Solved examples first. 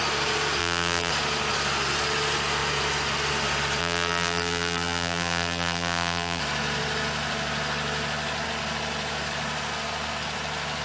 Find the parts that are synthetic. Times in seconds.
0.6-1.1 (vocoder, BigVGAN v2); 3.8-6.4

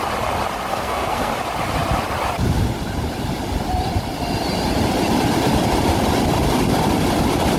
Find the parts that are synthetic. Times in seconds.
0.7-1.3 (codec, SNAC)

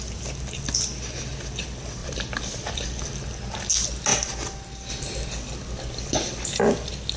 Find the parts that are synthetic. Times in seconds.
2.0-3.0 (vocoder, BigVGAN v2)

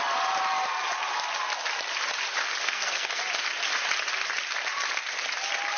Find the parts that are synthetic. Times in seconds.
2.6-3.2 (codec, SNAC)

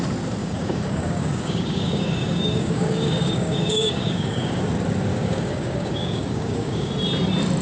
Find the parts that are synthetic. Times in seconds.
0.4-4.6 (codec, DAC); 5.1-6.9

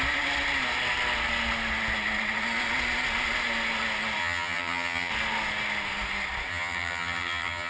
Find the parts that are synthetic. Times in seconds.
4.2-5.1 (vocoder, HiFi-GAN); 6.5-7.7

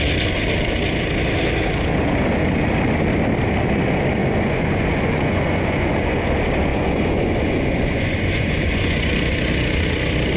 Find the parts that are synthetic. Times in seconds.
4.2-6.3 (vocoder, Vocos); 6.7-9.1

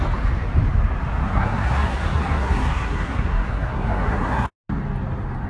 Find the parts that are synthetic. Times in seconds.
1.2-4.5 (codec, SNAC)